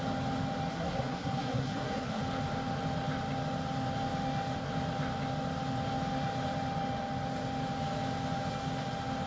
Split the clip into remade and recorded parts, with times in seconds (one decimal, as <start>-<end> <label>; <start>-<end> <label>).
0.0-0.7 recorded; 0.7-2.2 remade; 2.2-9.3 recorded